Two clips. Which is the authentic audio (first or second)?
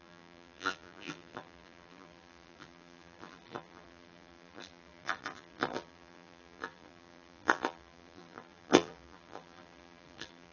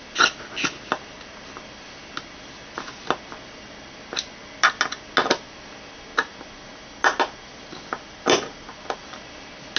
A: second